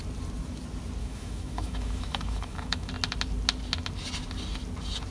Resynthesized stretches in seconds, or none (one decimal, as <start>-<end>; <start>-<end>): 1.0-2.9